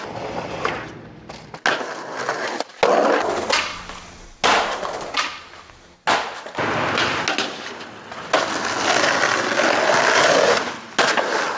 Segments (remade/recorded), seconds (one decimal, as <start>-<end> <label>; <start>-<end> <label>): 0.0-11.6 recorded